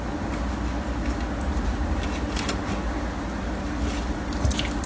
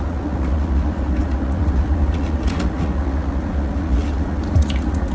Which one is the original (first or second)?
first